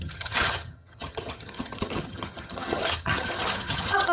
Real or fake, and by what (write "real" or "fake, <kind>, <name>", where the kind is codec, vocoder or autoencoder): fake, vocoder, HiFi-GAN